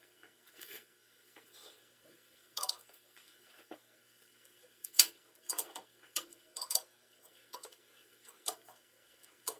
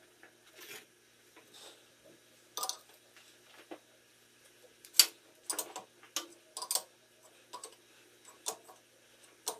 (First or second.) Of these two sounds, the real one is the second